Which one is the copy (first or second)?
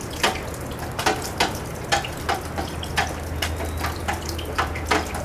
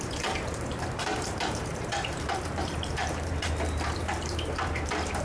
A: second